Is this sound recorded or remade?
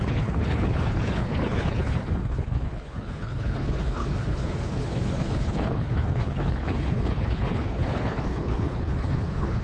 remade